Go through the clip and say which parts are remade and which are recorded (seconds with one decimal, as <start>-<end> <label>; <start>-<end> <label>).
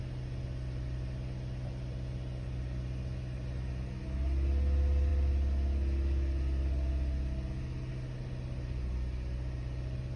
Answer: 0.0-10.2 recorded